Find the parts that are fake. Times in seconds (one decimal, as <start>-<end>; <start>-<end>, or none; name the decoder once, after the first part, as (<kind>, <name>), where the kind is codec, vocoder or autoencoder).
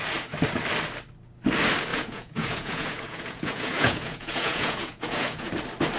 1.9-5.5 (vocoder, Vocos)